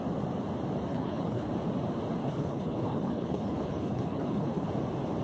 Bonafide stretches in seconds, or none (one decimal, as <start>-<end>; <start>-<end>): 0.0-0.9; 1.5-2.2; 4.7-5.2